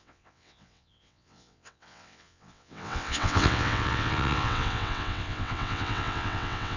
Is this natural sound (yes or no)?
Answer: no